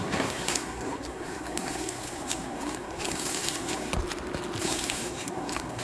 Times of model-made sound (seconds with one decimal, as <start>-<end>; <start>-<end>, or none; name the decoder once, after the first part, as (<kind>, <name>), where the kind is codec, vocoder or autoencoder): 0.0-3.9 (codec, SNAC); 4.6-5.8